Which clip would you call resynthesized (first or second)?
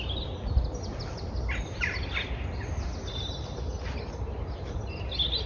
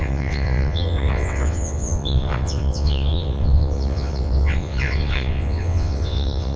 second